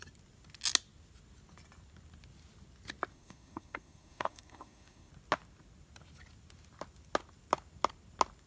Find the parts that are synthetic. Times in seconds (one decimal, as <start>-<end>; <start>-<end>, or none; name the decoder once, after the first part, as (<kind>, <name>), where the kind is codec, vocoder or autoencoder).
3.1-5.1 (codec, SNAC)